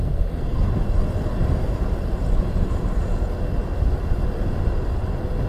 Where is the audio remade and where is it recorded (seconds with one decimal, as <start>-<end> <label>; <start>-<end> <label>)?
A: 0.0-0.7 remade; 0.7-5.5 recorded